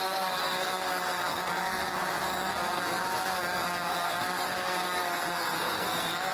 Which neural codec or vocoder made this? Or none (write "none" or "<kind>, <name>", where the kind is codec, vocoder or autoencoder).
codec, SNAC